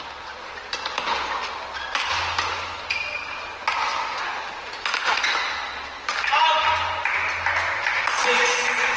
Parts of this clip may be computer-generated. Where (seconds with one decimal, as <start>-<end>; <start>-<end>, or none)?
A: none